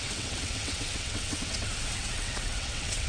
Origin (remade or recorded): remade